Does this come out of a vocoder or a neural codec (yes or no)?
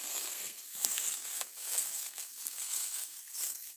yes